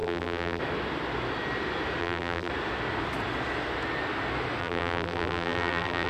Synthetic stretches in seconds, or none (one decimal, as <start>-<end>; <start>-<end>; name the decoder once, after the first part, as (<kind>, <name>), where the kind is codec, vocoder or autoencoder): 0.0-0.6 (vocoder, BigVGAN v2); 2.0-2.5; 4.6-6.1